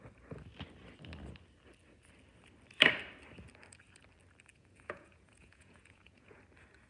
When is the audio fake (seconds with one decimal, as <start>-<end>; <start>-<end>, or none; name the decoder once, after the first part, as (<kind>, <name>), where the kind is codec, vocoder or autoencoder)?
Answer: 4.5-6.4 (vocoder, Vocos)